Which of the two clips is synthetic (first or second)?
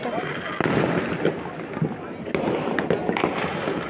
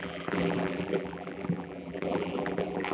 second